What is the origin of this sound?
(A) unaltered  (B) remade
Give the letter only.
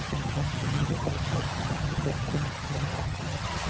B